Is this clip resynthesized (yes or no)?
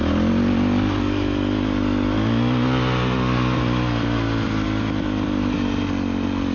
no